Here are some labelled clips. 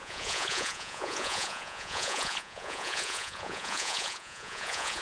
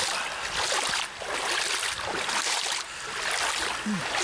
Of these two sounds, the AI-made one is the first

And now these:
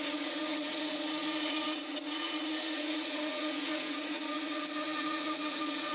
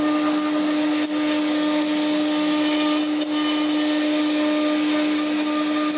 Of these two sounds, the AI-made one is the first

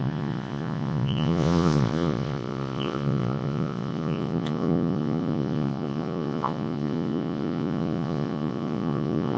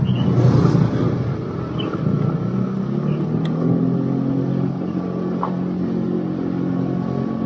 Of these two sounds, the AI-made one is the first